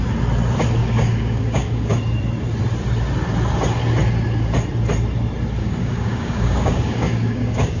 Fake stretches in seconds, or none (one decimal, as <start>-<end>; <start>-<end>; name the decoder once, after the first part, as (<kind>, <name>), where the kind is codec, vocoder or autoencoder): 0.8-2.0 (codec, DAC); 5.6-7.8